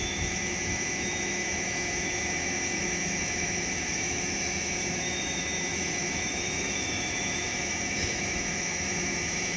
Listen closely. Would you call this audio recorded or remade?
remade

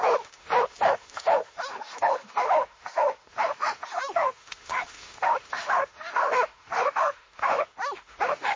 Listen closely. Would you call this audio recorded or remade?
remade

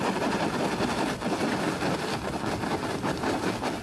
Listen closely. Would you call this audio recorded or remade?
recorded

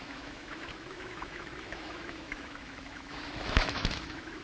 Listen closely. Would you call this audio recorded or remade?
remade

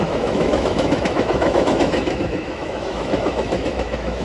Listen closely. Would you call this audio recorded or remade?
remade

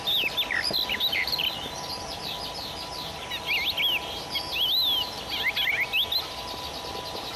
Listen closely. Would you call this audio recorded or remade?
recorded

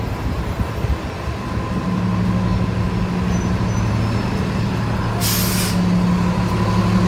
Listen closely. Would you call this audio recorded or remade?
recorded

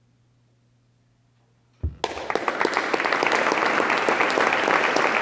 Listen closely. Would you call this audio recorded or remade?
recorded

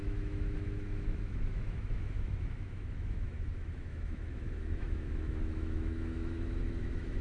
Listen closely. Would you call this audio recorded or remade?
remade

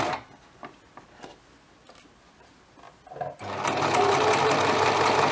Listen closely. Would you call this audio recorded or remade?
recorded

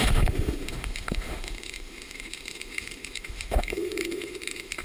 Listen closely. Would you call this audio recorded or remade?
remade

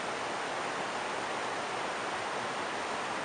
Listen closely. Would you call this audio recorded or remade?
recorded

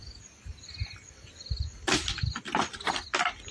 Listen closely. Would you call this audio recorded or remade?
recorded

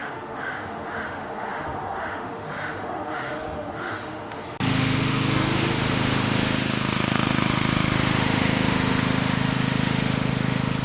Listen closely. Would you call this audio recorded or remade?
remade